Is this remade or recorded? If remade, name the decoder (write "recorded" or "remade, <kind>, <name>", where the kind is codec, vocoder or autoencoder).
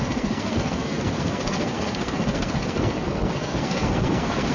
remade, codec, SNAC